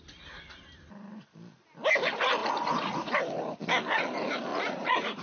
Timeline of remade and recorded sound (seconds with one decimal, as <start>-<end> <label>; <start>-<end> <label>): 0.0-2.4 recorded; 2.4-3.1 remade; 3.1-4.5 recorded; 4.5-5.2 remade

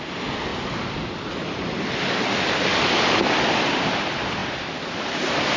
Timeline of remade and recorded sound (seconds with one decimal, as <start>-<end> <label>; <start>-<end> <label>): 0.0-5.6 recorded

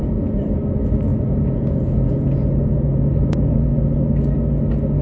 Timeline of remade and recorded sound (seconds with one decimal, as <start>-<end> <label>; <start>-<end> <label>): 0.0-0.6 remade; 0.6-1.1 recorded; 1.1-4.1 remade; 4.1-5.0 recorded

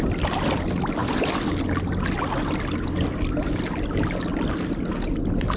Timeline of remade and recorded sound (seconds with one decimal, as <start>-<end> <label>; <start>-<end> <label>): 0.0-5.6 recorded

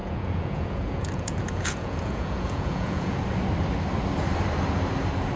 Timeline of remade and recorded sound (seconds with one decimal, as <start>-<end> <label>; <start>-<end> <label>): 0.0-3.2 remade; 3.2-5.4 recorded